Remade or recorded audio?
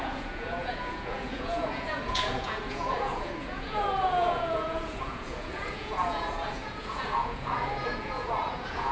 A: remade